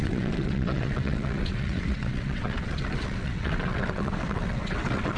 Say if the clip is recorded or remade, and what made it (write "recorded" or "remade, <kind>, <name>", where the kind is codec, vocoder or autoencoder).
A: remade, vocoder, WaveNeXt